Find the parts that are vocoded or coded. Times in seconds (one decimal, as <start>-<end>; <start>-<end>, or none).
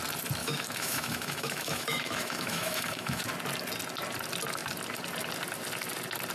0.4-3.2